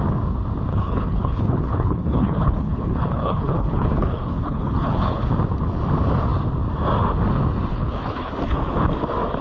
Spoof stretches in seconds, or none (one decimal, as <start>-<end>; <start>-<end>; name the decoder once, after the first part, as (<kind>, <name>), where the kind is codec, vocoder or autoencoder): 0.7-5.3 (codec, HILCodec); 7.7-8.3